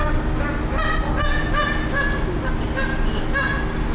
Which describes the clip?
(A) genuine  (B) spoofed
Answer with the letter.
A